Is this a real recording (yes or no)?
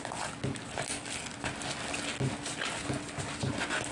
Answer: yes